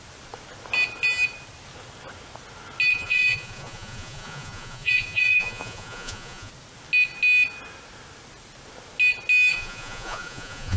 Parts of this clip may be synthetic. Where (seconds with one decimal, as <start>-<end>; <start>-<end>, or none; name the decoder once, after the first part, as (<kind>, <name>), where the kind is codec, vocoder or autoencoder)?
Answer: 2.9-6.5 (vocoder, Vocos); 9.5-10.8